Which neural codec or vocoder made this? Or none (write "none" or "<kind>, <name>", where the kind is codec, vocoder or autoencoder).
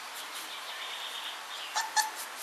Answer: none